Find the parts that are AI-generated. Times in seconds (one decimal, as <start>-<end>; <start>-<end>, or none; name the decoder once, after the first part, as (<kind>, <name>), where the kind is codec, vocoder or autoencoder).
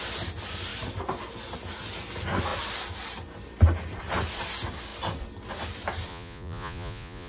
6.1-7.3 (vocoder, Vocos)